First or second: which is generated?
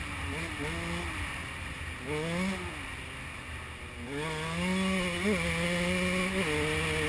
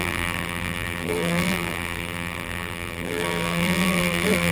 second